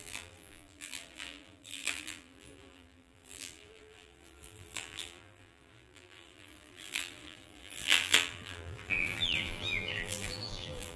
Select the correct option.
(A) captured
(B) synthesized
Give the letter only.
B